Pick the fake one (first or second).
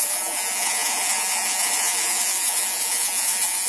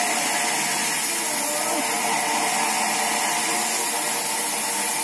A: first